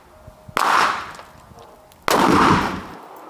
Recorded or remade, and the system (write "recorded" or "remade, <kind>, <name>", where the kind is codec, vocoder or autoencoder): recorded